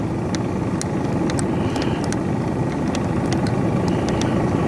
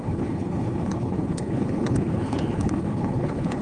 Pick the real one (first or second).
first